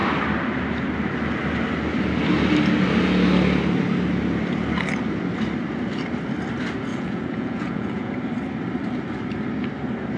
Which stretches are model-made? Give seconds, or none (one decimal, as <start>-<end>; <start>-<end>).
6.9-8.1